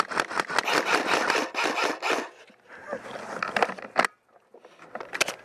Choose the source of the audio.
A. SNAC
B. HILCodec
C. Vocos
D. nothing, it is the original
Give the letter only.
D